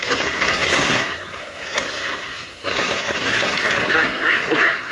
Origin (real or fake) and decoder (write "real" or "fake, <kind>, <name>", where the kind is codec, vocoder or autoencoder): fake, codec, SNAC